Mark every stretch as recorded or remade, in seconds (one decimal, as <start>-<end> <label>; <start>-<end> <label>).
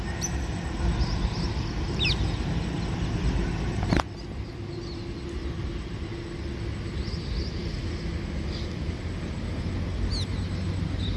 0.0-11.2 recorded